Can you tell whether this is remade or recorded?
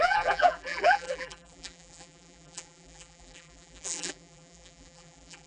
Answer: remade